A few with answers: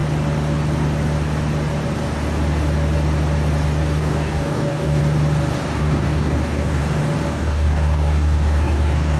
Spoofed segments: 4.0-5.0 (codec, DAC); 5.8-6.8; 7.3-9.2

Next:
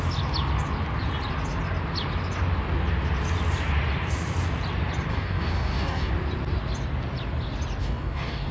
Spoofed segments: 5.1-6.1 (codec, DAC); 7.8-8.5

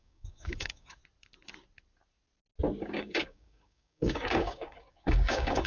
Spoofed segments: 0.0-1.0 (codec, DAC); 2.8-5.7

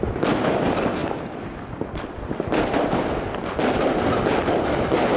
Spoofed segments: none

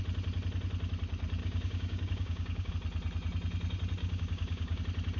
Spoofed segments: 1.4-2.7 (codec, DAC); 4.0-4.8